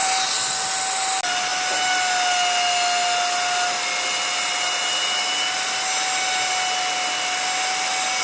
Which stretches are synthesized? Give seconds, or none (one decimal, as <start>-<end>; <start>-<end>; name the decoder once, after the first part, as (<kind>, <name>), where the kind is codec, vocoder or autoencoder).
none